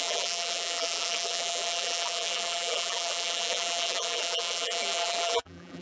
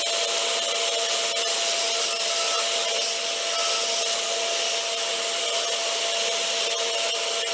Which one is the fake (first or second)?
first